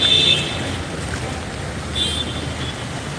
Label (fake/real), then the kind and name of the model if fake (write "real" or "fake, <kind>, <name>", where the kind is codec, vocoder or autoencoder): real